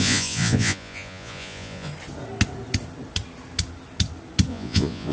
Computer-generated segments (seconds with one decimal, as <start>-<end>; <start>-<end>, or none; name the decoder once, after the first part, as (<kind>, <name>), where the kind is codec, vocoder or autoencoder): 0.0-1.9 (vocoder, Vocos); 4.5-5.1